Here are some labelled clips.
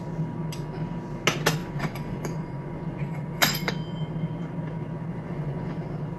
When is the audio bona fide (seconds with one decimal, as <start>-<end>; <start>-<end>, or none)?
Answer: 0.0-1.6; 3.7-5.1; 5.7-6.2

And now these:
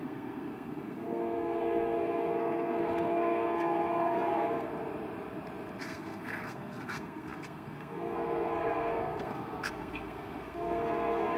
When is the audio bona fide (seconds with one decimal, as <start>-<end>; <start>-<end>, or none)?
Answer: 4.7-5.8

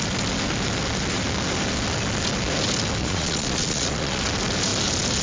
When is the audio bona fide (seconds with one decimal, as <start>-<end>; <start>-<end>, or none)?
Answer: 0.0-3.0; 4.2-5.2

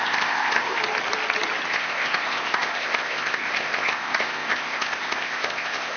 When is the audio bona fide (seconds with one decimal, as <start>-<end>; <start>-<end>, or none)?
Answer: 0.8-1.7

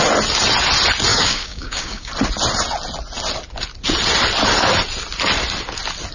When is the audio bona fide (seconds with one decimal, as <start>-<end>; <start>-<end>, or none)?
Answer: 0.0-1.1; 2.1-6.1

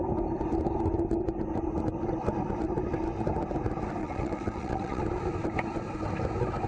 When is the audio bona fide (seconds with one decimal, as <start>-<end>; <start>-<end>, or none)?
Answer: 0.0-4.0; 5.0-6.7

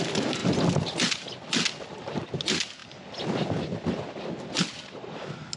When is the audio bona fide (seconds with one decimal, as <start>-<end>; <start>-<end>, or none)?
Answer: 0.0-5.6